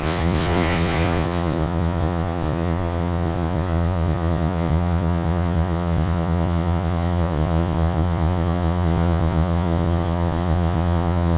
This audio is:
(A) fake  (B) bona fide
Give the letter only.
A